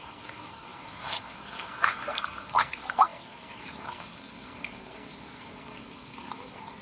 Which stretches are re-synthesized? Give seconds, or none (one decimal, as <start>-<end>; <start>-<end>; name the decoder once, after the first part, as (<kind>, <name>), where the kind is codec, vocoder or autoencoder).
0.0-6.8 (codec, SNAC)